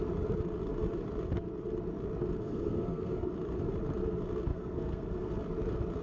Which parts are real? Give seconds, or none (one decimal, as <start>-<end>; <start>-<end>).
0.0-2.4; 3.3-4.5; 5.3-6.0